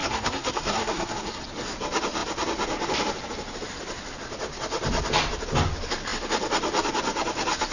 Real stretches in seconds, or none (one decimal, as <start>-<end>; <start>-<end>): 1.4-7.7